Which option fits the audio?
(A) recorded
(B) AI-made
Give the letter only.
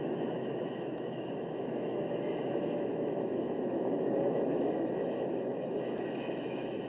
B